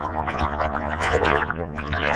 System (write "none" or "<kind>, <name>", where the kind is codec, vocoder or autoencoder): vocoder, Vocos